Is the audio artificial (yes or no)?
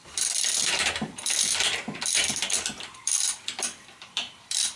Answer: yes